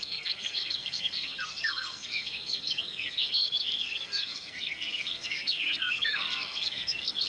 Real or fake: fake